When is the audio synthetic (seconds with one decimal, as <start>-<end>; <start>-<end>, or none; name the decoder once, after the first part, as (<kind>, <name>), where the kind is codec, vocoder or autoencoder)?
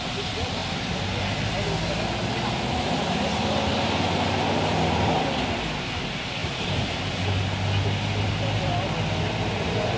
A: none